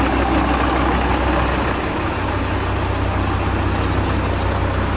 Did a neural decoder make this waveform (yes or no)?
no